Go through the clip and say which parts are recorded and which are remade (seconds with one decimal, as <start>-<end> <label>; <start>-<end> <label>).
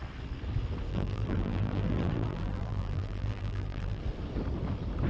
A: 0.0-0.9 recorded; 0.9-4.0 remade; 4.0-5.1 recorded